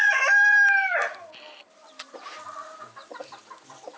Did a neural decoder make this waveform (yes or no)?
yes